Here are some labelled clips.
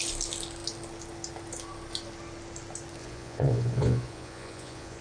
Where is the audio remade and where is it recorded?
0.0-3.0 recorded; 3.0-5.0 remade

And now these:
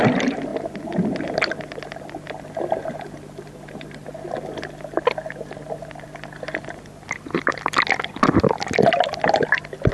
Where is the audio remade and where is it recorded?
0.0-9.9 recorded

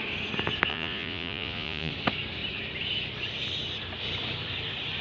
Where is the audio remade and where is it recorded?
0.0-0.7 recorded; 0.7-1.9 remade; 1.9-5.0 recorded

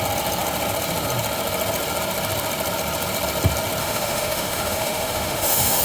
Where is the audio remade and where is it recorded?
0.0-3.8 recorded; 3.8-5.8 remade

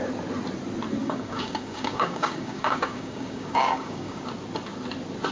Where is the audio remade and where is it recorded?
0.0-1.0 recorded; 1.0-4.2 remade; 4.2-5.3 recorded

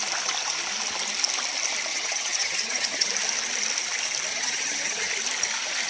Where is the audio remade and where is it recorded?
0.0-1.9 recorded; 1.9-3.1 remade; 3.1-4.3 recorded; 4.3-5.1 remade; 5.1-5.9 recorded

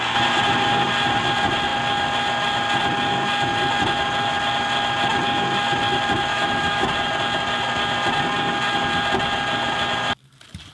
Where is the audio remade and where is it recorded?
0.0-6.3 recorded; 6.3-6.9 remade; 6.9-10.7 recorded

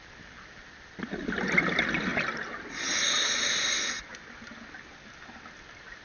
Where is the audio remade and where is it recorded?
0.0-6.0 recorded